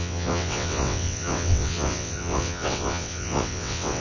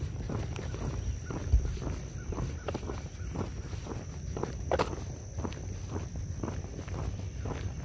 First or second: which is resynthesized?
first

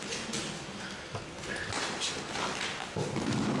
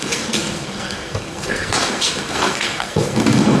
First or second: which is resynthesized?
second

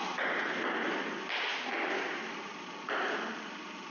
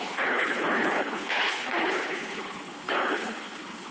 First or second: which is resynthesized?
second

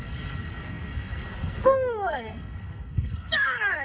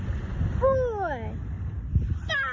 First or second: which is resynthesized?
first